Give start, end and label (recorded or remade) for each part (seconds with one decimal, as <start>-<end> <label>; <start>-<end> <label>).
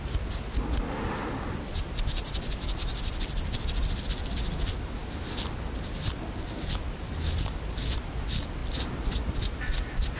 0.0-10.2 recorded